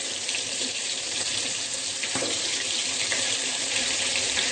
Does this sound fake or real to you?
fake